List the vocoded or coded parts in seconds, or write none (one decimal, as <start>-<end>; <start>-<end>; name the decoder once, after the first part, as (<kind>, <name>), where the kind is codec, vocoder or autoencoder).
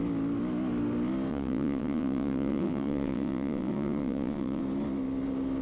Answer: 1.3-4.6 (vocoder, WaveNeXt)